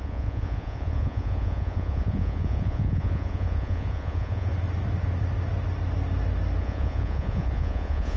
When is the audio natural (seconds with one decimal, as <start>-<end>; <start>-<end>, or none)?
4.5-6.6